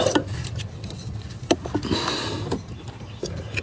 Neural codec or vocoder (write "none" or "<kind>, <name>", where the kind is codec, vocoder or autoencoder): none